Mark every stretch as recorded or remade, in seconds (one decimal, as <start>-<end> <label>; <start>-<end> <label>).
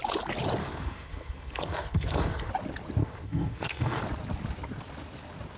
0.0-0.6 recorded; 0.6-2.5 remade; 2.5-3.0 recorded; 3.0-4.0 remade; 4.0-5.6 recorded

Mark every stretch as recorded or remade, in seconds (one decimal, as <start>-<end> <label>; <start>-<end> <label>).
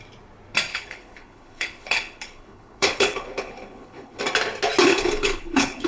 0.0-0.7 recorded; 0.7-4.2 remade; 4.2-4.9 recorded; 4.9-5.9 remade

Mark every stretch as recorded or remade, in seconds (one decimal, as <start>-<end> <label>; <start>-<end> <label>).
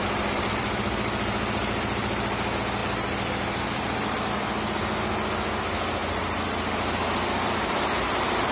0.0-0.8 remade; 0.8-2.8 recorded; 2.8-4.3 remade; 4.3-8.5 recorded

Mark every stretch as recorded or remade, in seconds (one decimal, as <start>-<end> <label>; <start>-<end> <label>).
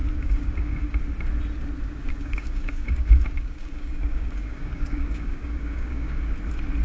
0.0-1.0 remade; 1.0-2.1 recorded; 2.1-6.2 remade; 6.2-6.8 recorded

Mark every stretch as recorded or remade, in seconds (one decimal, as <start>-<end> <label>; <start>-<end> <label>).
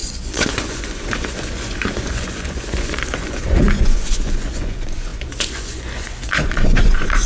0.0-7.3 remade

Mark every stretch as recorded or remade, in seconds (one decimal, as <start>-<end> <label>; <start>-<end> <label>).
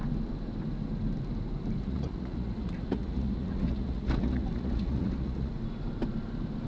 0.0-1.8 recorded; 1.8-5.5 remade; 5.5-6.7 recorded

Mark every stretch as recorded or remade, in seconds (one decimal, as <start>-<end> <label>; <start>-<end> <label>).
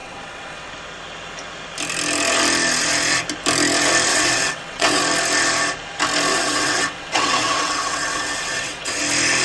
0.0-0.7 remade; 0.7-4.1 recorded; 4.1-5.0 remade; 5.0-6.3 recorded; 6.3-9.0 remade; 9.0-9.4 recorded